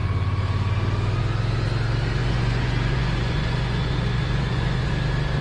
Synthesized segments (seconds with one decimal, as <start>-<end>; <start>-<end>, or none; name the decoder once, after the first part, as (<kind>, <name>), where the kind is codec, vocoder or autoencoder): 2.2-4.9 (vocoder, Vocos)